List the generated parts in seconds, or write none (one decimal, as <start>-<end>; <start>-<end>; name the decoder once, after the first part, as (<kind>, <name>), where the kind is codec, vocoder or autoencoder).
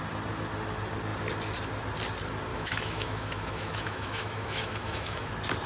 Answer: 2.5-5.3 (autoencoder, DAC-VAE)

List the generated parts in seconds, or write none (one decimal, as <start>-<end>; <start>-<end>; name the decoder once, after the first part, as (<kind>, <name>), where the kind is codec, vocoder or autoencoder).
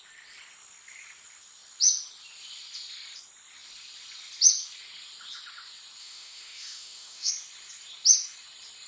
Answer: 6.0-7.3 (autoencoder, DAC-VAE)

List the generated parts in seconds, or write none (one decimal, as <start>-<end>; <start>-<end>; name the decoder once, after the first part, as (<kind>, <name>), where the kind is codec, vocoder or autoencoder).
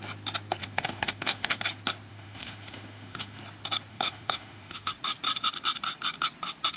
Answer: 0.6-1.6 (autoencoder, DAC-VAE); 2.1-3.4; 3.9-4.9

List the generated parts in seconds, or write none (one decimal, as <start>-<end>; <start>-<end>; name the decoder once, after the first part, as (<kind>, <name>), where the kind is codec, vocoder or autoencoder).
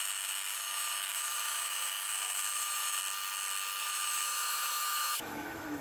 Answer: 0.0-3.0 (autoencoder, DAC-VAE); 3.8-5.8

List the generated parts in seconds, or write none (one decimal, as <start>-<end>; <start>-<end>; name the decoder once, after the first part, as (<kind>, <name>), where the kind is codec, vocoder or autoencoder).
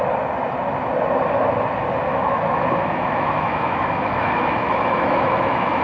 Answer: 2.1-5.8 (autoencoder, DAC-VAE)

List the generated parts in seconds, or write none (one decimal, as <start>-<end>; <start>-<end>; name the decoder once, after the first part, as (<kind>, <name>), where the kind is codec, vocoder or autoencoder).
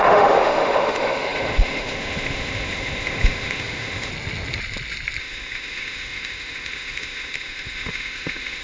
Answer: 0.0-4.1 (autoencoder, DAC-VAE); 5.2-8.6